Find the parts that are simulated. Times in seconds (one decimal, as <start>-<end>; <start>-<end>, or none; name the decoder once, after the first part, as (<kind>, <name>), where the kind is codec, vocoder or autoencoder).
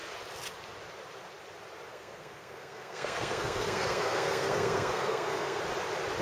1.9-5.6 (codec, SNAC)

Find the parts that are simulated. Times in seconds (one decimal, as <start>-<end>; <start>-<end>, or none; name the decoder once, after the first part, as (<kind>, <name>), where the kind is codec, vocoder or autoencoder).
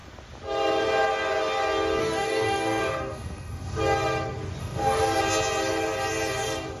2.0-3.8 (codec, DAC); 4.6-5.2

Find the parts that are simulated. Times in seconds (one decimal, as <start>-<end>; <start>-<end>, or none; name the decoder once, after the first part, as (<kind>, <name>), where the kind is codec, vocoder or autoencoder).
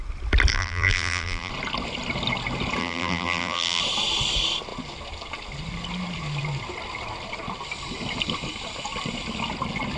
0.5-1.5 (vocoder, BigVGAN v2); 2.8-3.8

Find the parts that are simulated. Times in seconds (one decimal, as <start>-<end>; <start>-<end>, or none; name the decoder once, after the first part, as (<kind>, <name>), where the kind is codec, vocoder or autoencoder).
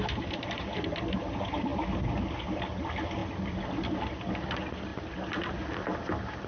none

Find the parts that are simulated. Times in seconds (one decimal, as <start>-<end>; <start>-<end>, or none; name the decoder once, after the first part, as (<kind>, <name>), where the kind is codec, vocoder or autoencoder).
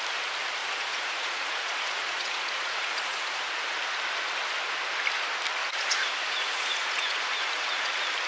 0.6-3.5 (vocoder, Vocos); 5.6-7.9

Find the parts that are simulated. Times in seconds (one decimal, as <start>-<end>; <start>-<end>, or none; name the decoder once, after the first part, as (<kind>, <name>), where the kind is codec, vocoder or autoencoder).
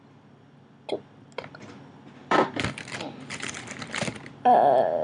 2.2-2.8 (vocoder, BigVGAN v2)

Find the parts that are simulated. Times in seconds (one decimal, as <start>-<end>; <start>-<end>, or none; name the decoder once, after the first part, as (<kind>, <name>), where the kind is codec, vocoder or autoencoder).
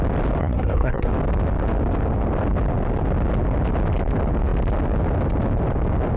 0.4-1.1 (codec, SNAC)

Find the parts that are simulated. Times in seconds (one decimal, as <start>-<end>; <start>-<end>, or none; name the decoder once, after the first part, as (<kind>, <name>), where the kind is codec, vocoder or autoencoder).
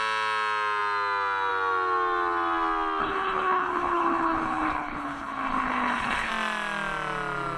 3.0-6.3 (codec, HILCodec)